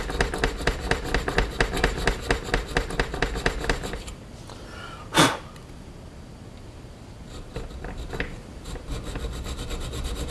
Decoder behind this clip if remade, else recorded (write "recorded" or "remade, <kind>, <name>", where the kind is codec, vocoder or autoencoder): recorded